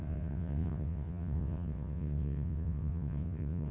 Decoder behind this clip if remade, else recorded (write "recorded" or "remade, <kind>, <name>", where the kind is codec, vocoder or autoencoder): remade, vocoder, WaveNeXt